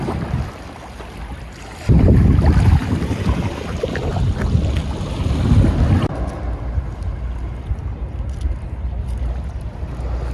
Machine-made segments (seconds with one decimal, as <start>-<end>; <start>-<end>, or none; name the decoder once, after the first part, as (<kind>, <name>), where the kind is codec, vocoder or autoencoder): none